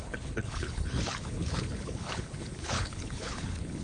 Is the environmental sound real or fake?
fake